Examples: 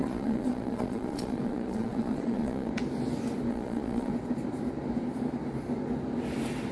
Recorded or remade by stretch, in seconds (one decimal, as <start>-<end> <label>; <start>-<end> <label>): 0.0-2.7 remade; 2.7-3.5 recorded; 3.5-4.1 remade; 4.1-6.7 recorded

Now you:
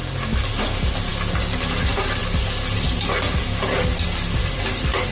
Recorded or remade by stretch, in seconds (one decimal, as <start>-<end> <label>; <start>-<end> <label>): 0.0-5.1 recorded

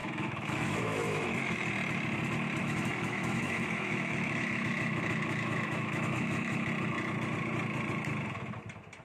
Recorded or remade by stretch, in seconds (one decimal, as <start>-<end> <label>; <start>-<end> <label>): 0.0-1.7 remade; 1.7-2.6 recorded; 2.6-6.7 remade; 6.7-9.0 recorded

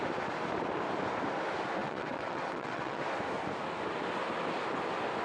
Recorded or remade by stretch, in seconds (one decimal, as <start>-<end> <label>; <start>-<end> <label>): 0.0-1.8 recorded; 1.8-3.0 remade; 3.0-5.2 recorded

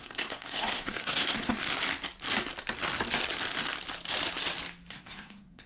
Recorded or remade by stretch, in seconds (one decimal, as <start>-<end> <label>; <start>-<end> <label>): 0.0-1.6 remade; 1.6-4.9 recorded; 4.9-5.7 remade

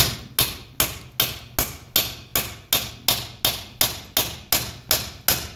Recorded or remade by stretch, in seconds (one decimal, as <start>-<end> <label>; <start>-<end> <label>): 0.0-5.6 recorded

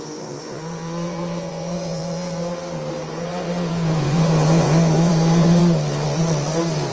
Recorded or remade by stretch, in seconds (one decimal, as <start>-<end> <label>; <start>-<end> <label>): 0.0-2.0 remade; 2.0-3.1 recorded; 3.1-5.6 remade; 5.6-6.9 recorded

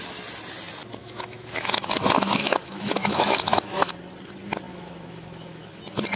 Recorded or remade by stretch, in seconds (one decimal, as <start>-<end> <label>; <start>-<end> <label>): 0.0-1.0 recorded; 1.0-3.9 remade; 3.9-4.7 recorded; 4.7-5.8 remade; 5.8-6.2 recorded